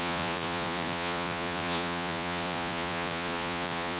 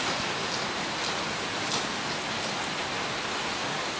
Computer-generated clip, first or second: first